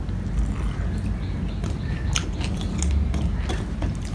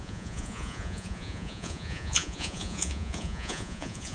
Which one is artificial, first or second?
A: second